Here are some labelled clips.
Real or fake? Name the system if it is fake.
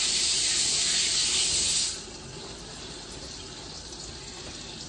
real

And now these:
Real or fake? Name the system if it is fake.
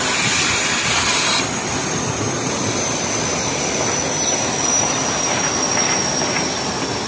real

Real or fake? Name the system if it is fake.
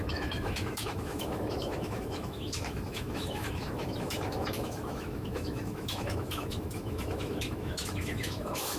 fake, autoencoder, DAC-VAE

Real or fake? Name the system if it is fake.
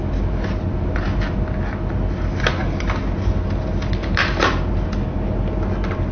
real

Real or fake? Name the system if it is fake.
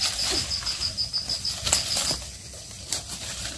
real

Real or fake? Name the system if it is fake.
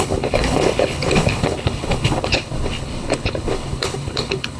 fake, codec, HILCodec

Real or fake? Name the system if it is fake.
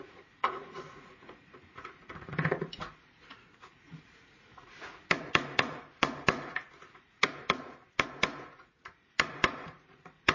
fake, vocoder, Vocos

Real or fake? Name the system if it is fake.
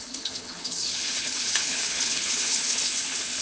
fake, codec, HILCodec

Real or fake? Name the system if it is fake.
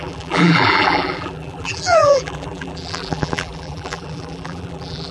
fake, vocoder, BigVGAN v2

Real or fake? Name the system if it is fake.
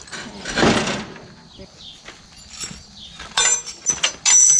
real